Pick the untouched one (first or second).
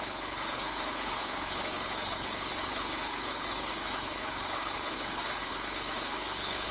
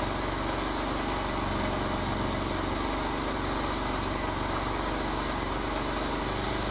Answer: second